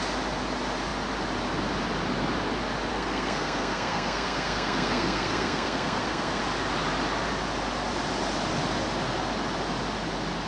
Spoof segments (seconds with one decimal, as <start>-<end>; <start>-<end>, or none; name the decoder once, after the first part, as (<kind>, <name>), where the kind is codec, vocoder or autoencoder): 2.9-6.4 (codec, SNAC)